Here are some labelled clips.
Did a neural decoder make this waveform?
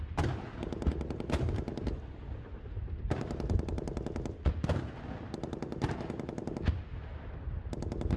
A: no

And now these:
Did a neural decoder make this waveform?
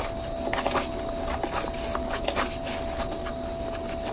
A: no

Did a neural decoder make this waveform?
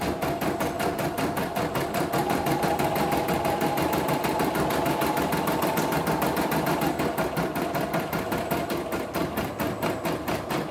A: no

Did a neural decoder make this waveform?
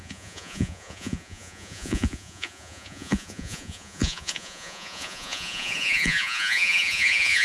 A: yes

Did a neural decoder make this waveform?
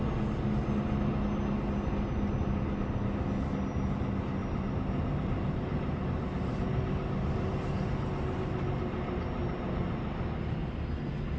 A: no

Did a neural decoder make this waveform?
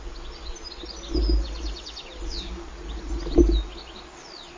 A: no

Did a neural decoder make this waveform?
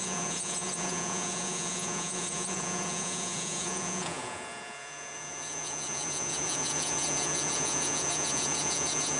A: yes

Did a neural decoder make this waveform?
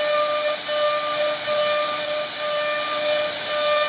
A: no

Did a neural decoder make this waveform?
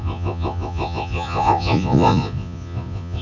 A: yes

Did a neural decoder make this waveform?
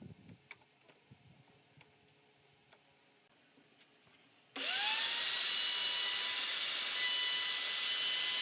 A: no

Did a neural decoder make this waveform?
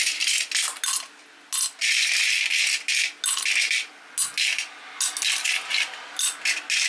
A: no